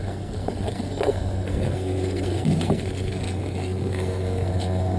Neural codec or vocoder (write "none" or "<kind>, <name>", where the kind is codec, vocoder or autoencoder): codec, SNAC